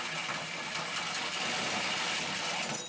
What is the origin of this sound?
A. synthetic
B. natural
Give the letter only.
B